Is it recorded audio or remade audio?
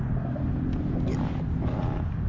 recorded